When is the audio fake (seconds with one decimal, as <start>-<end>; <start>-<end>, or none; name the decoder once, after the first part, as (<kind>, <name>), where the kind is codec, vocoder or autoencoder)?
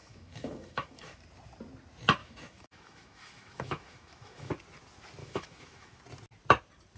0.0-1.2 (autoencoder, DAC-VAE); 2.2-4.5; 5.2-6.0